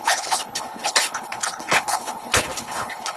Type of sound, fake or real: fake